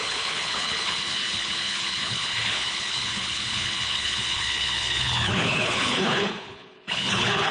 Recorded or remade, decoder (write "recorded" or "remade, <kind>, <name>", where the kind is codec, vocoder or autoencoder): remade, codec, HILCodec